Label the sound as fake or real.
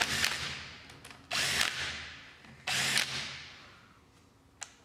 real